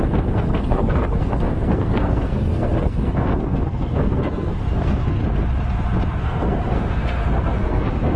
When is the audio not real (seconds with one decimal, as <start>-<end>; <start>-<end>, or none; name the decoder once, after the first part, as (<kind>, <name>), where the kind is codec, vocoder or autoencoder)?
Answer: 0.0-5.2 (codec, SNAC); 6.2-8.2